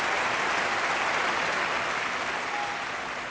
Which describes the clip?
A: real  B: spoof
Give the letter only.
A